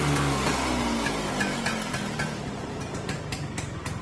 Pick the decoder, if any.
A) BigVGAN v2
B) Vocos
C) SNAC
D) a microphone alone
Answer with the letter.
D